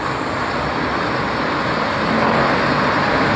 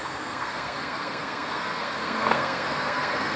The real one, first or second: first